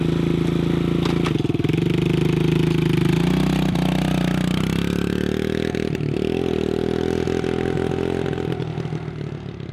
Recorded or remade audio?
recorded